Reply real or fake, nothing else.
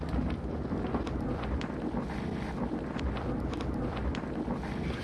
real